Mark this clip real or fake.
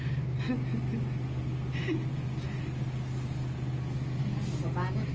real